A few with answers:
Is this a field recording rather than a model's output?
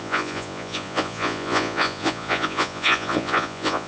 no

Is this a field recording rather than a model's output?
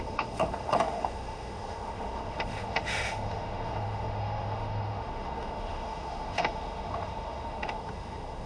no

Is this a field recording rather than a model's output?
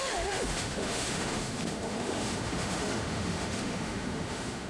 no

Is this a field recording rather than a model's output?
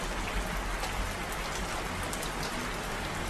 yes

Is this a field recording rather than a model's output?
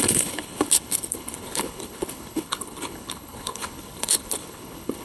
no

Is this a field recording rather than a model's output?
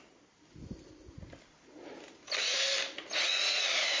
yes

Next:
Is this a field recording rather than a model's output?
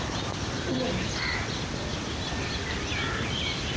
yes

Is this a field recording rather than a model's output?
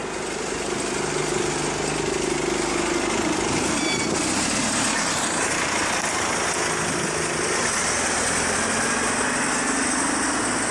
yes